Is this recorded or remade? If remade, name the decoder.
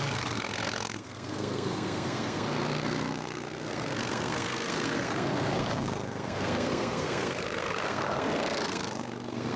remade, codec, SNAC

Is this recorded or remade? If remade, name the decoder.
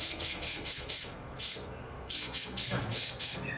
remade, codec, SNAC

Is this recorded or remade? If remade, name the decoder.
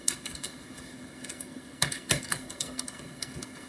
remade, codec, SNAC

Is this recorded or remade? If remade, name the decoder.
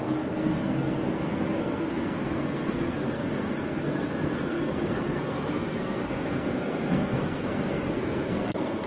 remade, codec, SNAC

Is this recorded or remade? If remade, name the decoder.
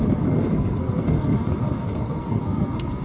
remade, codec, SNAC